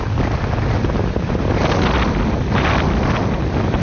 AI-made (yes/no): no